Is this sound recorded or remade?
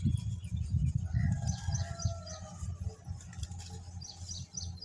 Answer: recorded